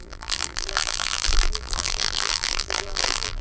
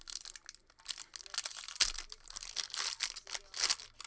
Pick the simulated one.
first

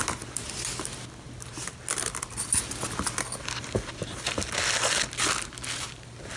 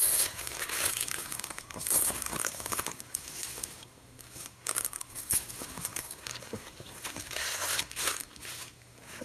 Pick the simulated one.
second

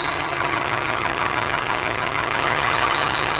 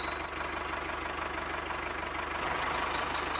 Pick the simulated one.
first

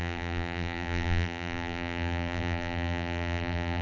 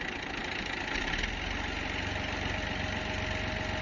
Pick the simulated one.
first